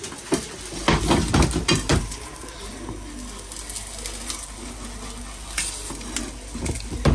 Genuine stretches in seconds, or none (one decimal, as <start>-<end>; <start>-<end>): 0.0-1.9; 2.9-7.1